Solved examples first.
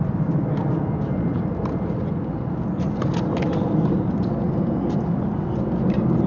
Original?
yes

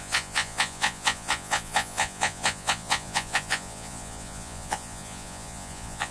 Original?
no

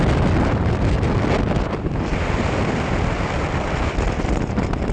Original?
yes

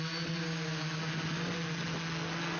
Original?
yes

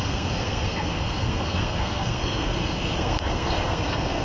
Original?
no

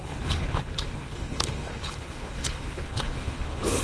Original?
no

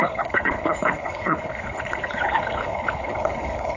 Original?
no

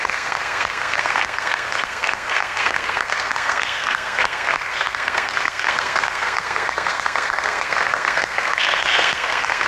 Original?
no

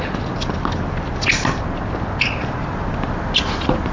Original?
yes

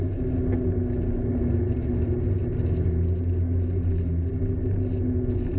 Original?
yes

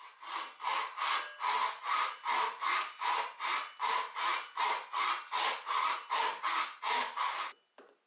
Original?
yes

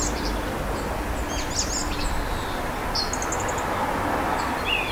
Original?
yes